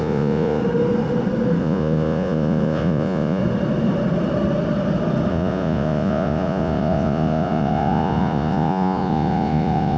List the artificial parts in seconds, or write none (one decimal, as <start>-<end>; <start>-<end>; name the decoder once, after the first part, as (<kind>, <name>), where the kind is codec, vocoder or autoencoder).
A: 0.0-0.6 (vocoder, Vocos); 1.6-3.4; 5.3-10.0